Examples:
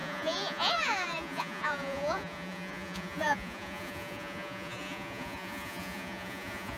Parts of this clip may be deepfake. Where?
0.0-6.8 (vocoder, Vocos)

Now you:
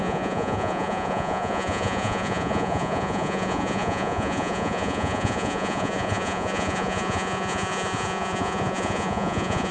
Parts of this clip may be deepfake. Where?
0.0-9.7 (vocoder, Vocos)